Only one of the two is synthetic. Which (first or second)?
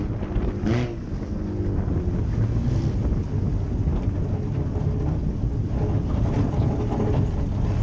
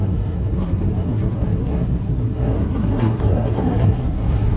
second